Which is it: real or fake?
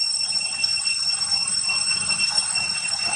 real